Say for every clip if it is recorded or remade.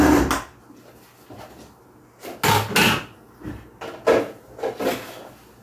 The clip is recorded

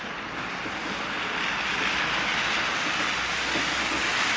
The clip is recorded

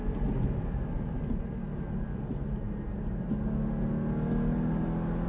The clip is recorded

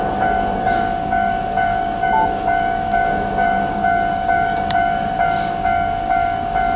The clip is remade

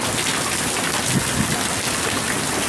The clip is recorded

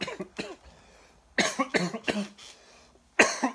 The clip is recorded